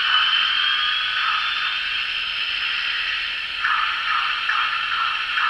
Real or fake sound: real